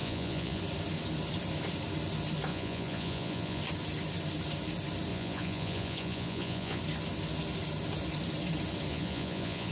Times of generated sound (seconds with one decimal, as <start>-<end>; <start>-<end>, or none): 0.0-0.6; 2.5-3.6; 5.1-6.8; 8.9-9.7